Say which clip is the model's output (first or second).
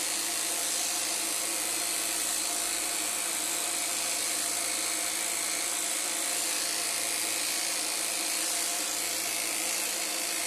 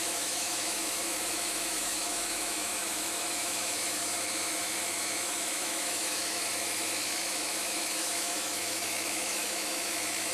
second